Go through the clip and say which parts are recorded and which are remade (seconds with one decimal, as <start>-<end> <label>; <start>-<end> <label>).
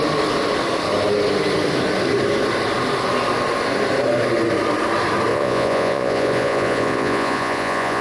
0.0-5.3 recorded; 5.3-8.0 remade